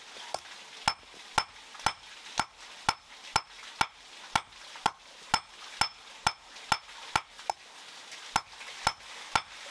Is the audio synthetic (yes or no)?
no